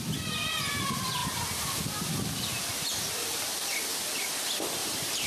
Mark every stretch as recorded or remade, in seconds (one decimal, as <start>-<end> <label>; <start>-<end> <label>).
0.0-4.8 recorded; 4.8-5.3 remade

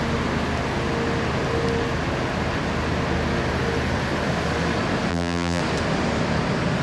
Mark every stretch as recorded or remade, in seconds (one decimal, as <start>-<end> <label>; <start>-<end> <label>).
0.0-5.1 recorded; 5.1-5.6 remade; 5.6-6.8 recorded

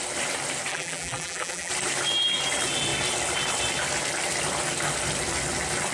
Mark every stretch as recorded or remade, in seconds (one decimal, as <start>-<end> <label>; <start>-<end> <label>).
0.0-0.7 recorded; 0.7-1.7 remade; 1.7-5.9 recorded

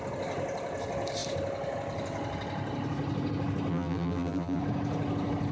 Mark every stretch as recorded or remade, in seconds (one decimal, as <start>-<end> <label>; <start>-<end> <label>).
0.0-3.7 recorded; 3.7-4.6 remade; 4.6-5.5 recorded